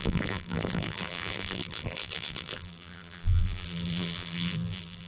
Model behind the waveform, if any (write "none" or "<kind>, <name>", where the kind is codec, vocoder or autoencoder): vocoder, BigVGAN v2